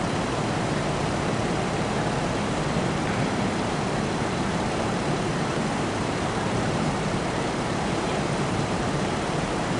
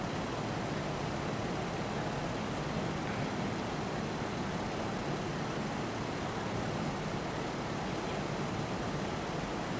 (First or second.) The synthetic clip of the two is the first